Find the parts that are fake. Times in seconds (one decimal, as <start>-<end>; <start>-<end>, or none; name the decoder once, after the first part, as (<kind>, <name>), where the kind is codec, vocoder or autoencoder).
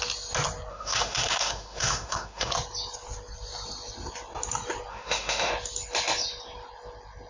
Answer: 0.7-2.5 (autoencoder, DAC-VAE); 4.9-5.5